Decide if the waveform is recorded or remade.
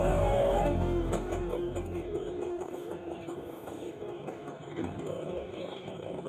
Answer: remade